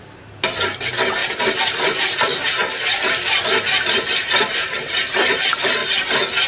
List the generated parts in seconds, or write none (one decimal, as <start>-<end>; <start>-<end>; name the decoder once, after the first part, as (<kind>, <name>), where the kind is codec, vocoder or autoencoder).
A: 1.2-4.8 (vocoder, BigVGAN v2)